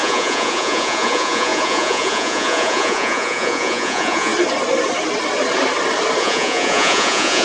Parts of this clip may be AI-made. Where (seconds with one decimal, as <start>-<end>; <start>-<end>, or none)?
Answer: 0.0-4.3; 6.2-7.4